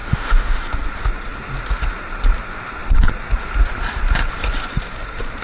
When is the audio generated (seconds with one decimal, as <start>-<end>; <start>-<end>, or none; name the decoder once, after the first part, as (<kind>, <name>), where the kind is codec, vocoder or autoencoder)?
0.0-0.6 (autoencoder, DAC-VAE)